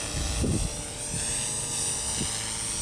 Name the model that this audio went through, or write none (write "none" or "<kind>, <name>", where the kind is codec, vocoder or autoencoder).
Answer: none